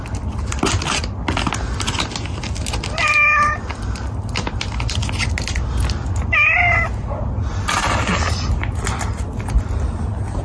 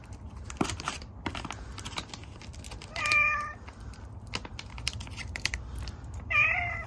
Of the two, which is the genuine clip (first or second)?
first